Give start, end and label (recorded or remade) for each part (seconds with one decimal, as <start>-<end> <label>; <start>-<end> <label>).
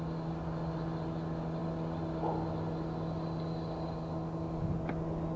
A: 0.0-5.4 recorded